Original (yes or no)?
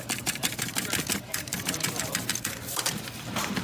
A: no